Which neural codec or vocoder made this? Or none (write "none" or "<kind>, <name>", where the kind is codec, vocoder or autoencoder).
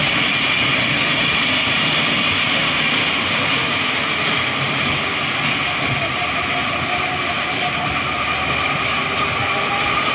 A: none